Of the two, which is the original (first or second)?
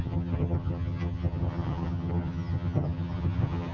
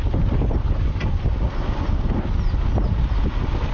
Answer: second